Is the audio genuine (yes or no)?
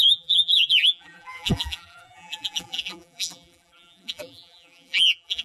no